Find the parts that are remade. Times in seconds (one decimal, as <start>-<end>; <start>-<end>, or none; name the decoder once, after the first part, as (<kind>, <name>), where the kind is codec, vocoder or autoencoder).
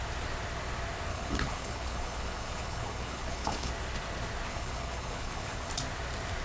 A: 1.1-3.7 (codec, HILCodec); 4.5-5.7